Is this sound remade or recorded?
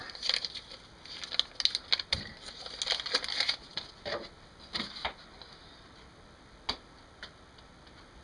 recorded